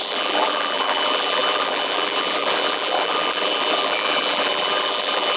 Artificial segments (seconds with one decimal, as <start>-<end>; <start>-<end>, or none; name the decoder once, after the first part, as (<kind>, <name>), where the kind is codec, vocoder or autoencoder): 0.0-5.4 (vocoder, BigVGAN v2)